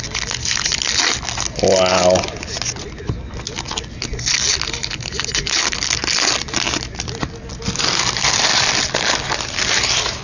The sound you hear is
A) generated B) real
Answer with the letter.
B